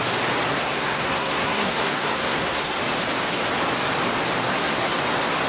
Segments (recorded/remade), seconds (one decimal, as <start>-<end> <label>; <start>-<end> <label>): 0.0-0.5 recorded; 0.5-2.8 remade; 2.8-4.5 recorded; 4.5-5.0 remade; 5.0-5.5 recorded